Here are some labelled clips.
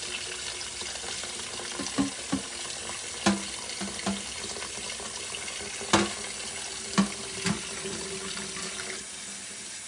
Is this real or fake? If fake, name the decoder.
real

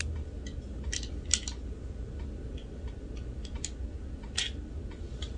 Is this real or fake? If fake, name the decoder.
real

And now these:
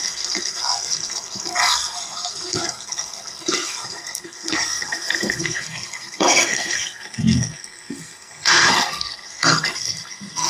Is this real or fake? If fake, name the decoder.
fake, codec, SNAC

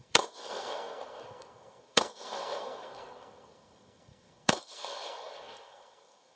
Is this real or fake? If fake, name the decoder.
fake, codec, SNAC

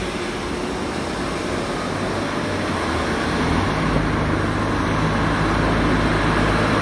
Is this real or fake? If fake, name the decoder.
real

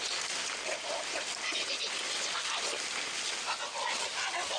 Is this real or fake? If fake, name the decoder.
real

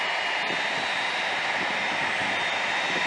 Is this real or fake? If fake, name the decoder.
real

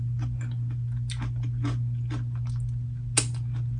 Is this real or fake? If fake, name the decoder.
real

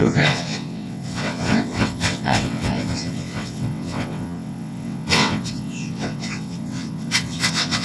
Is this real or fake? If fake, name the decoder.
fake, vocoder, WaveNeXt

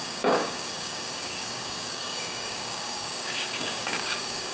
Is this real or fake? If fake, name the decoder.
fake, codec, DAC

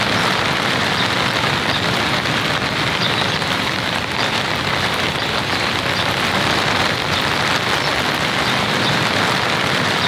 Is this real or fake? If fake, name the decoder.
real